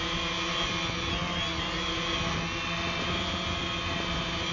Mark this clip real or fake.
real